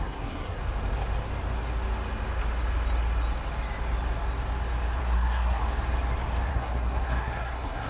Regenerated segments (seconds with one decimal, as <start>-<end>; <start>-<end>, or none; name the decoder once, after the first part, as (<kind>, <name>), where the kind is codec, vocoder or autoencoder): 0.0-0.6 (codec, SNAC); 5.0-5.6; 6.5-7.9

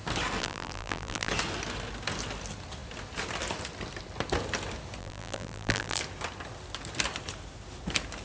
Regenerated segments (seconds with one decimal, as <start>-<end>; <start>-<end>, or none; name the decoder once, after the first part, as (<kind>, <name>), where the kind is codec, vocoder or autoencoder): 0.4-1.3 (vocoder, BigVGAN v2); 5.0-6.0

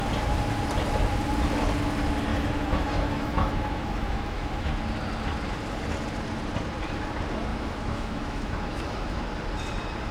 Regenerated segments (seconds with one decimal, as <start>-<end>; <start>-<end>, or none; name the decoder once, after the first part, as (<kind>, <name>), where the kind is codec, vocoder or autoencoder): 2.3-4.7 (autoencoder, DAC-VAE); 7.5-9.2

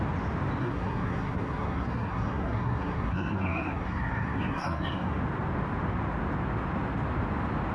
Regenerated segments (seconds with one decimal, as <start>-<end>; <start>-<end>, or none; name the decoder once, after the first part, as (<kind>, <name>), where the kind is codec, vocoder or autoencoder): 0.6-5.2 (codec, SNAC)

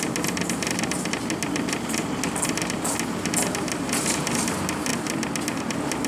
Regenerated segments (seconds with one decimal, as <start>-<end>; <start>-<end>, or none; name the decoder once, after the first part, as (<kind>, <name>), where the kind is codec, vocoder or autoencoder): none

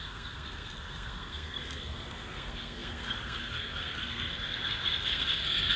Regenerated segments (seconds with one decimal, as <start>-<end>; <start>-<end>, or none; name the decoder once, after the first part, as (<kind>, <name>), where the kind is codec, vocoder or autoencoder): 0.0-5.8 (codec, SNAC)

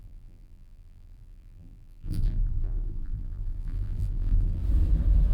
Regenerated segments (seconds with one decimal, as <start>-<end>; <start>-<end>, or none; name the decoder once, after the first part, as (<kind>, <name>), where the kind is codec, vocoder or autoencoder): 0.0-4.6 (vocoder, BigVGAN v2)

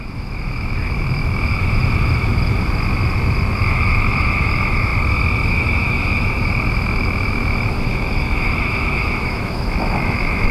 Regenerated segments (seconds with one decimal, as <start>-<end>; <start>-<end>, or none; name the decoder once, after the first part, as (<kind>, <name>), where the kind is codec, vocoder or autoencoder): 0.0-1.8 (autoencoder, DAC-VAE); 3.5-4.9; 5.5-10.5